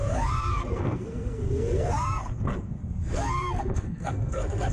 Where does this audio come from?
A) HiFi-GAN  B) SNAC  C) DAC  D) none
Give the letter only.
B